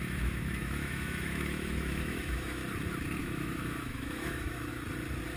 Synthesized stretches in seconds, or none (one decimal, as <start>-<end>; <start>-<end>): 0.0-2.6; 3.2-4.7